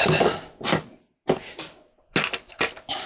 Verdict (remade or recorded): recorded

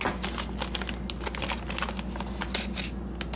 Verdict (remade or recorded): recorded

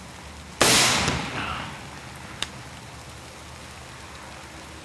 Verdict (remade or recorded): recorded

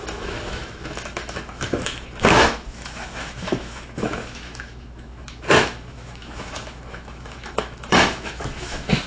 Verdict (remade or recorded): remade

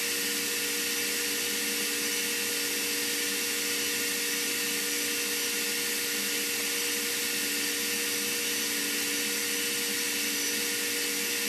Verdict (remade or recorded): recorded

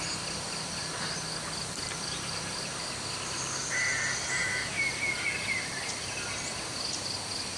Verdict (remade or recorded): recorded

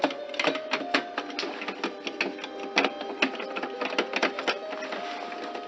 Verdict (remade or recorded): recorded